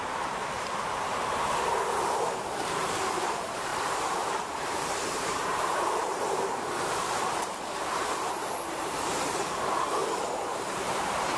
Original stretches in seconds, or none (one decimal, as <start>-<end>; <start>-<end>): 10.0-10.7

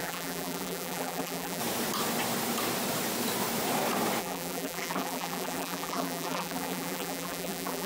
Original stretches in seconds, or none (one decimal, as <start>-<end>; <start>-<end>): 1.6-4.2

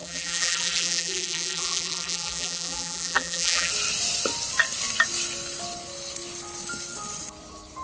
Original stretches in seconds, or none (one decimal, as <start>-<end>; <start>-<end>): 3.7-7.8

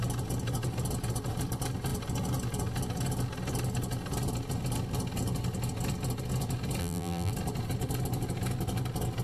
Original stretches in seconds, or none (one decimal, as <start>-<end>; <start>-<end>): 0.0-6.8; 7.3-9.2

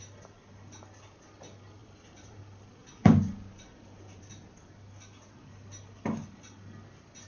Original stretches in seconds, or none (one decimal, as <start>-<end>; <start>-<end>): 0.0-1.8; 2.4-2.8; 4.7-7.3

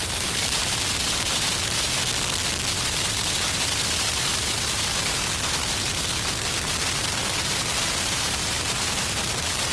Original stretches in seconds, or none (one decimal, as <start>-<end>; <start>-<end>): 2.0-2.7

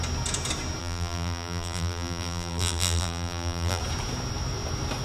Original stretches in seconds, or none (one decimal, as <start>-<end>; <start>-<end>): 0.0-0.8; 3.8-5.0

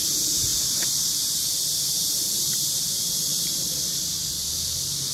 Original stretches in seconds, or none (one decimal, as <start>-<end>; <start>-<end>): none